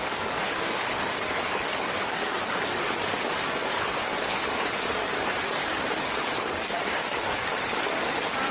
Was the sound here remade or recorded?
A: remade